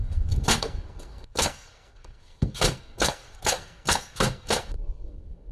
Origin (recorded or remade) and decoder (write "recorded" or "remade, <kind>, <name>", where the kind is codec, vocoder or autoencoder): remade, codec, SNAC